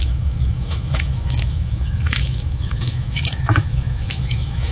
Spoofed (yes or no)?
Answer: yes